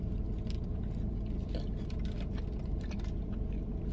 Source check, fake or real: fake